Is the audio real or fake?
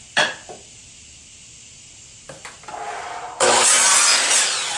real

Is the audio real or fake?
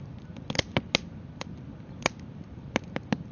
real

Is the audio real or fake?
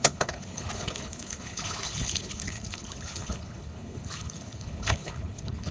fake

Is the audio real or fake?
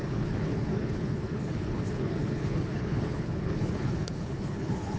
fake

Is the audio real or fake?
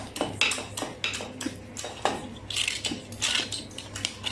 real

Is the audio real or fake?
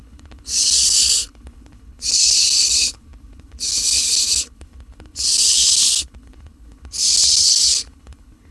fake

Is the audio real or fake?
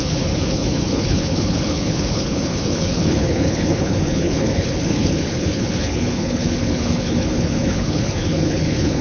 fake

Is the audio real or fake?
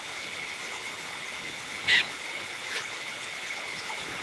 fake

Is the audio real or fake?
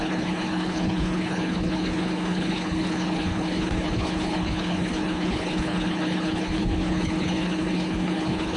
fake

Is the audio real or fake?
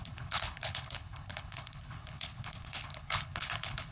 fake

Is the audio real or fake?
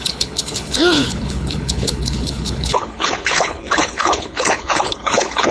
fake